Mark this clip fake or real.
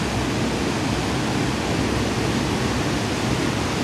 real